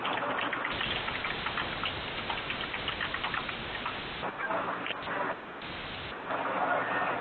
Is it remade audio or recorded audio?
recorded